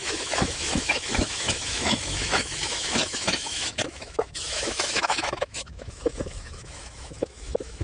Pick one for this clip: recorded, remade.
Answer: remade